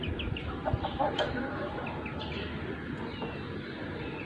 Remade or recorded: recorded